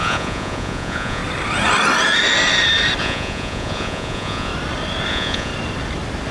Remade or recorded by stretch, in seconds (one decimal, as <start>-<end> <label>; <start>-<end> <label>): 0.0-1.2 remade; 1.2-3.0 recorded; 3.0-4.5 remade; 4.5-5.1 recorded; 5.1-5.5 remade; 5.5-6.3 recorded